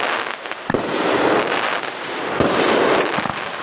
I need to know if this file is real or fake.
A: real